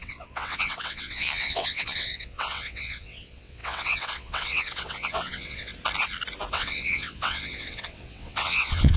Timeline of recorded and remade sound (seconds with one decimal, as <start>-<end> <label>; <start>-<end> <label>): 0.0-5.7 remade; 5.7-6.5 recorded; 6.5-9.0 remade